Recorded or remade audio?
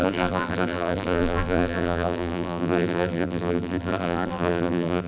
remade